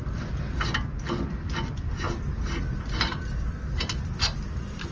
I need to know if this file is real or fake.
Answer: real